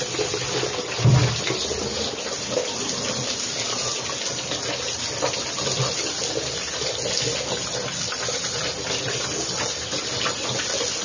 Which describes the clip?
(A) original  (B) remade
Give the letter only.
A